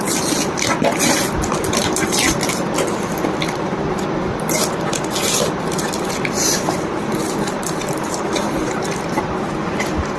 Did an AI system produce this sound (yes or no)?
no